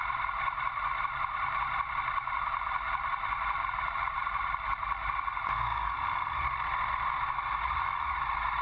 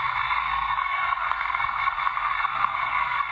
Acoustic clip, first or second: first